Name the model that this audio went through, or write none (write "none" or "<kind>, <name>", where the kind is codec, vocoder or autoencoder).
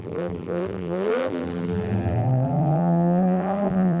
vocoder, BigVGAN v2